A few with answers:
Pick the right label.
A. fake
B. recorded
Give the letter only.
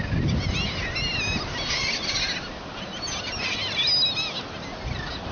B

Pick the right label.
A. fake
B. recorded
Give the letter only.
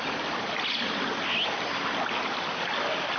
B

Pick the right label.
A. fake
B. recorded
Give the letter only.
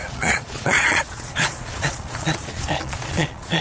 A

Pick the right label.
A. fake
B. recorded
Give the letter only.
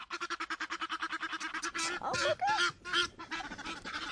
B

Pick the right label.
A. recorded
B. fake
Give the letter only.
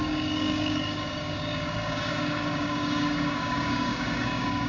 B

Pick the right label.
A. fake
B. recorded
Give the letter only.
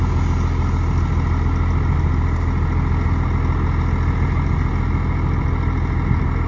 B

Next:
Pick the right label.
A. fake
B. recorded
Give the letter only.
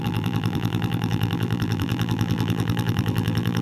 A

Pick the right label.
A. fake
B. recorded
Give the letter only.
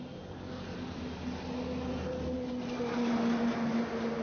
B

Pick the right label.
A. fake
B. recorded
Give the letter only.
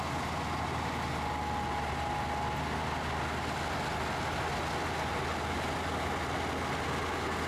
B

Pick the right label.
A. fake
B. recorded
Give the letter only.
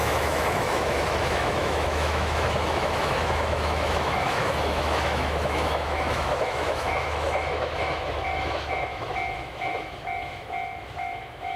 A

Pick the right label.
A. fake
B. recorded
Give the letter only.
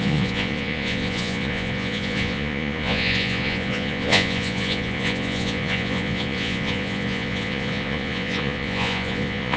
A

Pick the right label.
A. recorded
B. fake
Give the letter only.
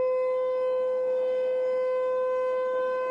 B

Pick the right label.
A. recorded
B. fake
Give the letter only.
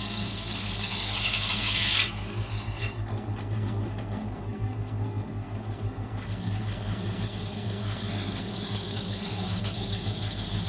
B